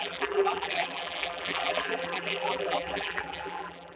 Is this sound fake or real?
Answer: fake